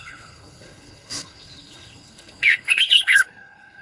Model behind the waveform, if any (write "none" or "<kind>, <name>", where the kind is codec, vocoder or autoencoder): codec, HILCodec